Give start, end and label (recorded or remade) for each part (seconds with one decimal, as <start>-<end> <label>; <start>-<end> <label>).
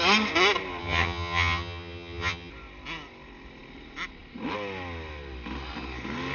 0.0-0.8 recorded; 0.8-2.5 remade; 2.5-6.3 recorded